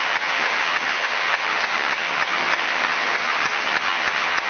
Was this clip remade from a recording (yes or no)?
yes